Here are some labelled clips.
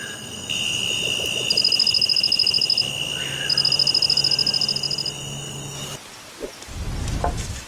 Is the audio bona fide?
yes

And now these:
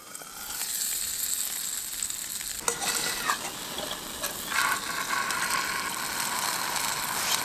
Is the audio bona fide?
yes